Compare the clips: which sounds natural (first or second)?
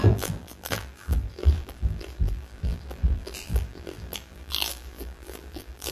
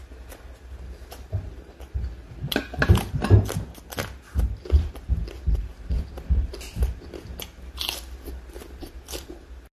second